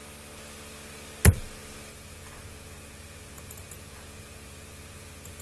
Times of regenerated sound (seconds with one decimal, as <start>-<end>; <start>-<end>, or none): 1.9-5.4